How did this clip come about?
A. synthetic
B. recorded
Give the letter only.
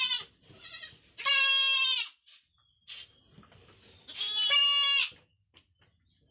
B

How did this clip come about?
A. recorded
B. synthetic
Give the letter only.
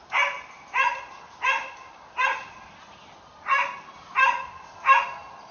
A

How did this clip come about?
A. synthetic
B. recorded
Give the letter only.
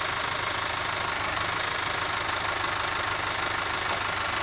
B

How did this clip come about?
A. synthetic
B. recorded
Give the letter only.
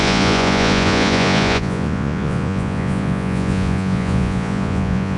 A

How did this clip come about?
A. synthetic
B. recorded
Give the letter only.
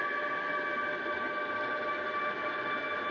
B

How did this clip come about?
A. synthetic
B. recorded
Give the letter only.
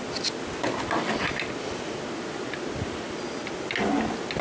B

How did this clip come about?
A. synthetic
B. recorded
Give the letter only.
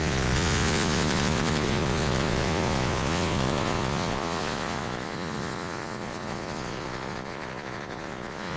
A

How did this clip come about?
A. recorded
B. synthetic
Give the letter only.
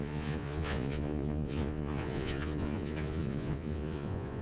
B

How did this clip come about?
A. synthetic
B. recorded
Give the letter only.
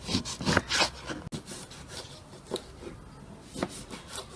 B